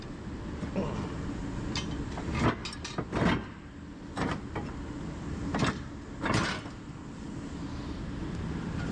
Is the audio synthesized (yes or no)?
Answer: no